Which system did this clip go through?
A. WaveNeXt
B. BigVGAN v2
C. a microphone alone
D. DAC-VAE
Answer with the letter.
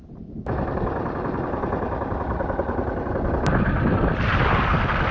C